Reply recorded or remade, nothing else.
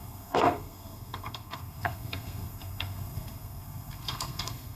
remade